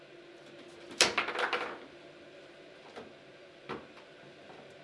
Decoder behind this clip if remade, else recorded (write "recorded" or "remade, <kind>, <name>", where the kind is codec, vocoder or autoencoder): recorded